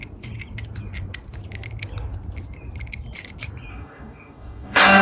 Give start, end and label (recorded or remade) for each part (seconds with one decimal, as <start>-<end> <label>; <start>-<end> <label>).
0.0-3.7 recorded; 3.7-5.0 remade